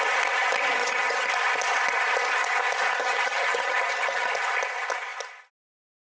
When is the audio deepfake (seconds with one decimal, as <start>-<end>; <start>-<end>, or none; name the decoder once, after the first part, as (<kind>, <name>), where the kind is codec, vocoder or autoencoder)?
0.8-1.3 (vocoder, HiFi-GAN); 3.0-4.3